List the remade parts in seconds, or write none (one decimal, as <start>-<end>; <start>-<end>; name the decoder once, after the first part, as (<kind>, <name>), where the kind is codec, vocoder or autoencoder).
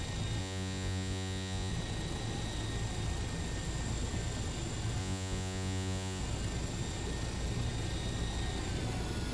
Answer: 0.4-1.7 (vocoder, Vocos); 5.0-6.2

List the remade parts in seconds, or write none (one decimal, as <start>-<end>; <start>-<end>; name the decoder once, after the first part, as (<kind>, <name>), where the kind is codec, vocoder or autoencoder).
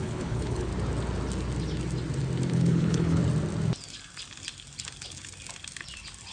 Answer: 0.0-0.7 (codec, HILCodec); 2.5-3.2